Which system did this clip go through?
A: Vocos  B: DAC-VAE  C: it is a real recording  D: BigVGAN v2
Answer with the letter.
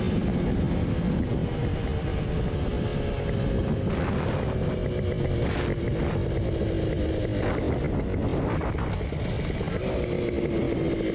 C